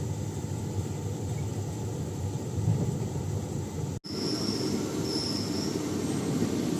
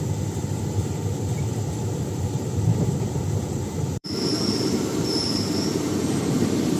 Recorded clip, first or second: first